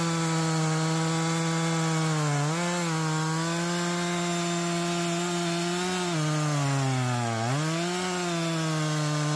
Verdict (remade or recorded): recorded